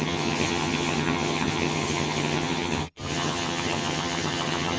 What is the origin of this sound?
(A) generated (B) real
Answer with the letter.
A